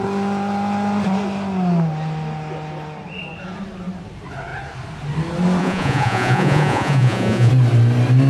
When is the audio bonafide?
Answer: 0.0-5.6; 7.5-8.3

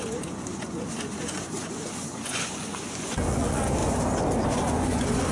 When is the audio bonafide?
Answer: 3.8-4.5